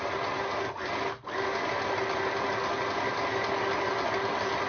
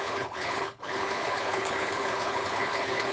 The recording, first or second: first